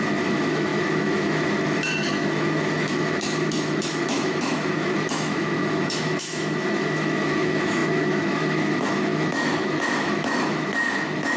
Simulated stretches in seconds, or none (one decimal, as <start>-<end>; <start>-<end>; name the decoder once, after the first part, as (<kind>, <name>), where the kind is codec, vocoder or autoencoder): 0.0-11.4 (autoencoder, DAC-VAE)